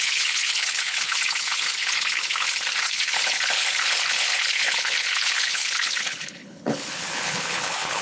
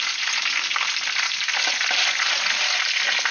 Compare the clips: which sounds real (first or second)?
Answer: second